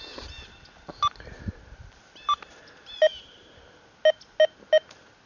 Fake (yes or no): no